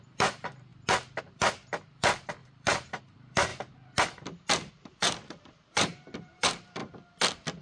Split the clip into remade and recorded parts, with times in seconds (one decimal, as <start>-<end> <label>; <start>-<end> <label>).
0.0-0.7 remade; 0.7-1.2 recorded; 1.2-3.5 remade; 3.5-4.7 recorded; 4.7-6.8 remade; 6.8-7.6 recorded